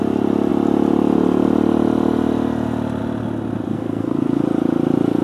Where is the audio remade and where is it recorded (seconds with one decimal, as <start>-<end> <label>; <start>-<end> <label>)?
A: 0.0-3.7 recorded; 3.7-4.4 remade; 4.4-5.2 recorded

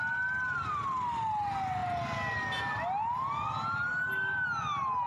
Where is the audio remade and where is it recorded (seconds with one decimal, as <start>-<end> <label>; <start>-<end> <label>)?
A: 0.0-5.1 recorded